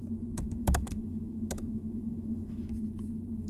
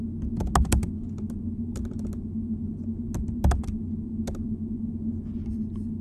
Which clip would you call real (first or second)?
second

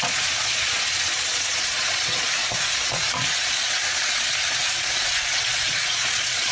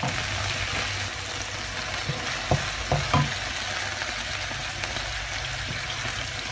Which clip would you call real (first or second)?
second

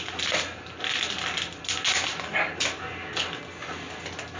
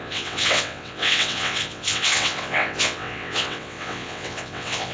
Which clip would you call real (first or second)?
first